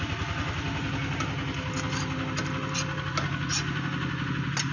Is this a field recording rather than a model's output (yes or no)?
yes